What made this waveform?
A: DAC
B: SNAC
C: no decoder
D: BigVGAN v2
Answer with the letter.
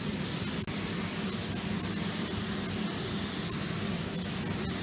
C